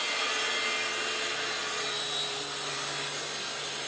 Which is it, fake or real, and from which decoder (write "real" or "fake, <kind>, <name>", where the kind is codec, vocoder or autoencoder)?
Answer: real